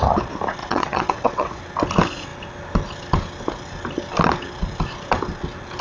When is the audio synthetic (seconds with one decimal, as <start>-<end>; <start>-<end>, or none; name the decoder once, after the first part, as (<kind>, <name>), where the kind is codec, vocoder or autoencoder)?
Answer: 0.6-1.6 (vocoder, WaveNeXt)